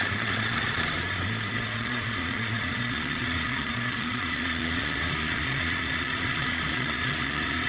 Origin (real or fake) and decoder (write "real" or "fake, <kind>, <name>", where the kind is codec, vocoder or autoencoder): fake, vocoder, Vocos